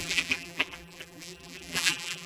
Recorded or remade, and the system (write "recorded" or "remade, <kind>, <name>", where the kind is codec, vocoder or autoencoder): remade, vocoder, BigVGAN v2